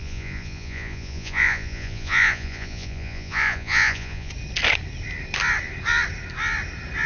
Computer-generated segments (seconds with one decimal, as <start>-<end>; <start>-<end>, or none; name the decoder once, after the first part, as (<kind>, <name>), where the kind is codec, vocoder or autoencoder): 0.0-4.3 (vocoder, Vocos)